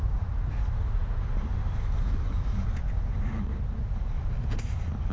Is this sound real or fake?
real